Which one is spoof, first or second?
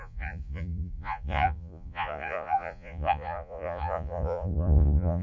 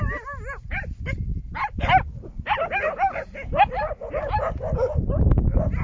first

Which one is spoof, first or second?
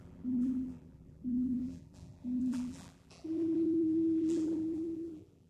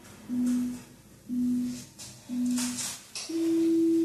first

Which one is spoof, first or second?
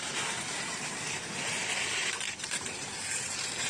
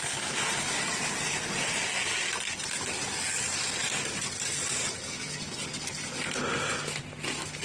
first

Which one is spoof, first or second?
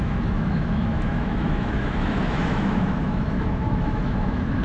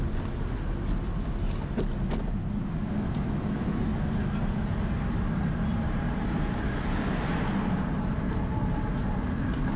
first